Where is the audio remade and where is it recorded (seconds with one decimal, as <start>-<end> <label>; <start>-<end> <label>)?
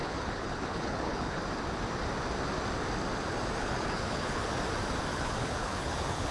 0.0-1.4 remade; 1.4-3.6 recorded; 3.6-4.6 remade; 4.6-5.1 recorded; 5.1-6.3 remade